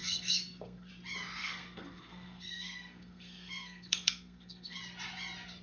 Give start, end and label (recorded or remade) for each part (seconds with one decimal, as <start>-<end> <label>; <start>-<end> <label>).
0.0-0.9 remade; 0.9-1.4 recorded; 1.4-4.8 remade; 4.8-5.6 recorded

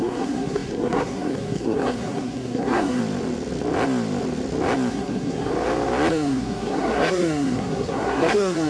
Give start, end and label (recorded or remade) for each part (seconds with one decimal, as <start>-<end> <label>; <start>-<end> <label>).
0.0-3.0 remade; 3.0-4.9 recorded; 4.9-5.5 remade; 5.5-6.1 recorded; 6.1-8.7 remade

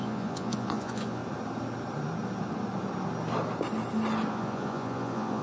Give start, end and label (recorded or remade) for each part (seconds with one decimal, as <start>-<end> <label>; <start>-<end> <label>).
0.0-1.2 remade; 1.2-4.3 recorded; 4.3-5.4 remade

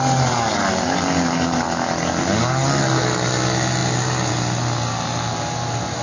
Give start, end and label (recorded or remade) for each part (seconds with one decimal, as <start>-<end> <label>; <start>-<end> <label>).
0.0-6.0 recorded

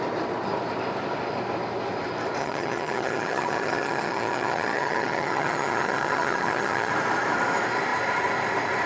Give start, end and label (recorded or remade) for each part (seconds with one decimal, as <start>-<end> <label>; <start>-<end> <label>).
0.0-2.4 recorded; 2.4-6.9 remade; 6.9-8.9 recorded

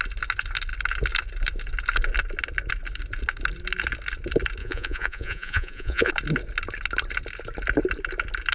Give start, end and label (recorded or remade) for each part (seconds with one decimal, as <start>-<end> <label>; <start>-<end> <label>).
0.0-4.6 recorded; 4.6-6.1 remade; 6.1-8.5 recorded

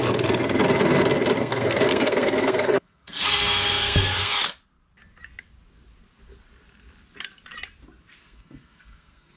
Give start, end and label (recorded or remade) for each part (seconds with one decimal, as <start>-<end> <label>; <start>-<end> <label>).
0.0-1.4 recorded; 1.4-4.3 remade; 4.3-8.2 recorded; 8.2-9.4 remade

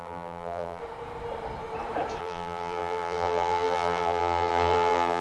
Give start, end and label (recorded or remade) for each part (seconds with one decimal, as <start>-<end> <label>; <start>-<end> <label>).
0.0-0.8 remade; 0.8-2.2 recorded; 2.2-5.2 remade